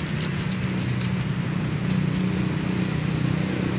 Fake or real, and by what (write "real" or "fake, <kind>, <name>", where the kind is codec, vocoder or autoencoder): real